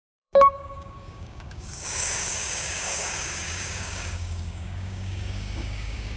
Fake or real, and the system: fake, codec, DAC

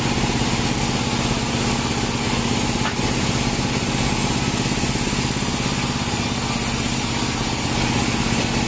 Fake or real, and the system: real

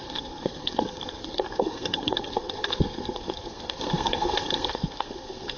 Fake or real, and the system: fake, codec, SNAC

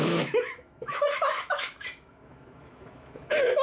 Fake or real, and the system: fake, autoencoder, DAC-VAE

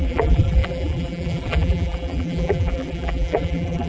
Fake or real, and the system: fake, vocoder, BigVGAN v2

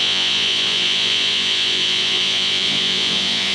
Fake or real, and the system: fake, vocoder, Vocos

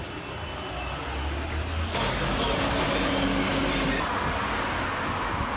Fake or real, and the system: real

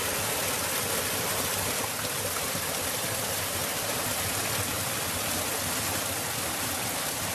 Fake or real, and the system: real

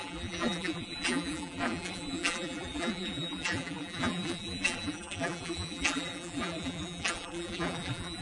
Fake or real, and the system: fake, vocoder, BigVGAN v2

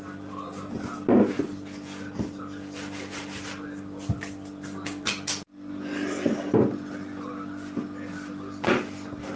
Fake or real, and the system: real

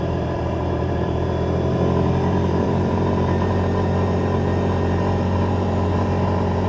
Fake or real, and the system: fake, vocoder, BigVGAN v2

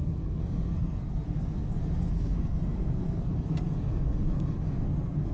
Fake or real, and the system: fake, codec, SNAC